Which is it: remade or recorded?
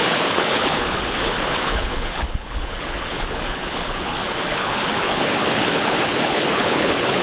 remade